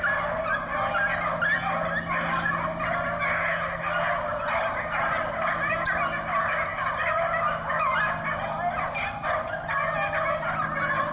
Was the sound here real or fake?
real